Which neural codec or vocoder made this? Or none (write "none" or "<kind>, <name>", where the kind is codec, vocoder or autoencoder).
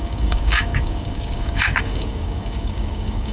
codec, DAC